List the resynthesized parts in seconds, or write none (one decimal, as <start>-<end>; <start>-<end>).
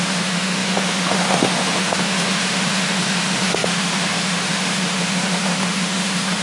0.0-6.4